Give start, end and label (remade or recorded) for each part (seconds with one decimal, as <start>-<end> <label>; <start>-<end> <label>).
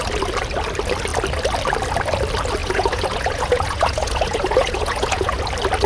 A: 0.0-2.6 recorded; 2.6-5.4 remade; 5.4-5.9 recorded